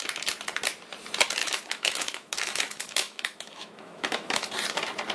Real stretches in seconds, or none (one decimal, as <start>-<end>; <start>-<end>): 0.0-1.4; 4.5-5.1